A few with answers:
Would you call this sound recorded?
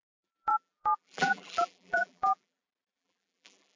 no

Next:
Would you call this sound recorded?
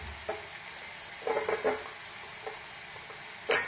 yes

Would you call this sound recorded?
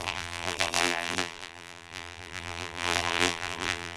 no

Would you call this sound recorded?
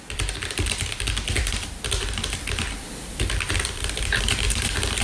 no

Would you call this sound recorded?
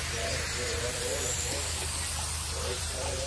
no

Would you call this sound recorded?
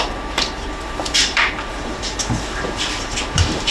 no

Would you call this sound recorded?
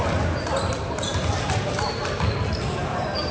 yes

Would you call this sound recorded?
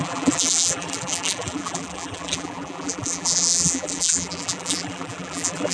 no